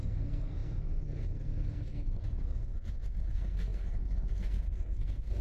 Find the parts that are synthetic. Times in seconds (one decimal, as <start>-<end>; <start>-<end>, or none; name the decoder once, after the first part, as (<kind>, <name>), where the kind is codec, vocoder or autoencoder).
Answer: 0.0-5.4 (codec, SNAC)